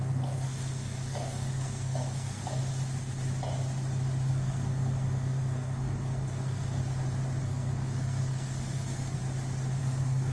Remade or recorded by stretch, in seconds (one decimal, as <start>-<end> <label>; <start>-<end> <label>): 0.0-2.6 remade; 2.6-4.3 recorded; 4.3-6.8 remade; 6.8-7.4 recorded; 7.4-9.2 remade; 9.2-9.8 recorded; 9.8-10.3 remade